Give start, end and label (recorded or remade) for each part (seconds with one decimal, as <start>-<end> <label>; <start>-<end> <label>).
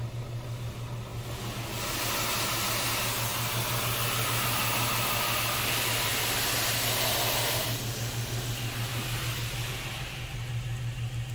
0.0-11.3 recorded